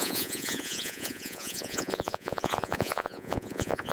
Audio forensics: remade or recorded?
remade